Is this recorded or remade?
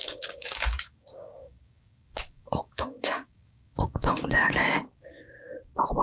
remade